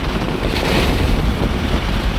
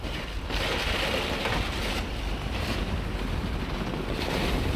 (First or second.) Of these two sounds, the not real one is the first